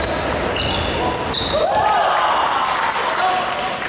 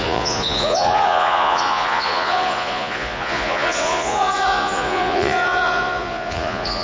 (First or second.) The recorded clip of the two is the first